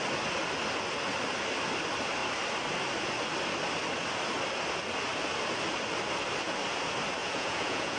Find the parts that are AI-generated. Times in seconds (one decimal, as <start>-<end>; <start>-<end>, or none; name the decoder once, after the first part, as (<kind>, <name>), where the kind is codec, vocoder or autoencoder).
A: 7.2-8.0 (vocoder, Vocos)

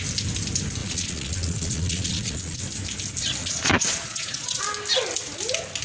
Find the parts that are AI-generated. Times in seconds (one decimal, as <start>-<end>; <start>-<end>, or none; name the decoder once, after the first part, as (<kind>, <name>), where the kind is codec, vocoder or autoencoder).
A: 0.8-2.6 (vocoder, Vocos); 3.4-4.6